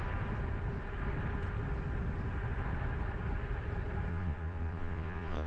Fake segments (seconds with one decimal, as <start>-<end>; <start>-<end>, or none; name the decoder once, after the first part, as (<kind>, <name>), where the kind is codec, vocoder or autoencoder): 4.1-5.5 (vocoder, Vocos)